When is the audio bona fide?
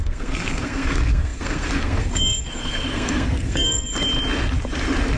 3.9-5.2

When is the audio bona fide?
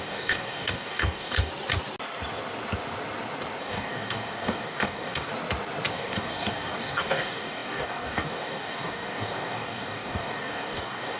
1.5-3.6; 5.3-5.9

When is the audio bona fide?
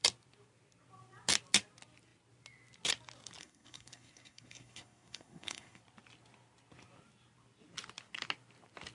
0.0-3.4; 5.8-8.9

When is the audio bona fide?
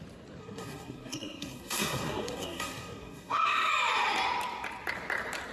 0.0-0.4; 3.7-5.5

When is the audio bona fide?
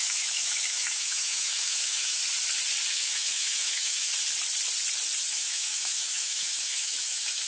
2.2-2.9; 4.1-5.3